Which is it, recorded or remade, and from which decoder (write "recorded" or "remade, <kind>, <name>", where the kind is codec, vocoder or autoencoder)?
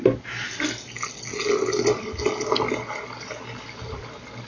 recorded